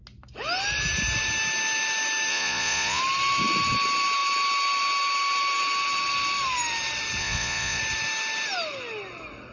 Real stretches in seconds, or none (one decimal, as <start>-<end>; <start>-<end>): 0.0-2.3; 3.0-7.2; 7.8-9.5